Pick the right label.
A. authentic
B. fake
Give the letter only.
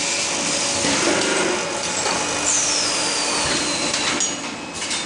A